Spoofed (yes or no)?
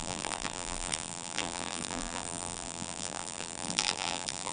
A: yes